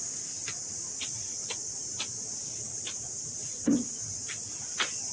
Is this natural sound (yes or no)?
yes